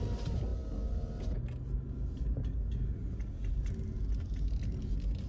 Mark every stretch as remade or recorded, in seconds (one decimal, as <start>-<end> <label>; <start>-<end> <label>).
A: 0.0-5.3 recorded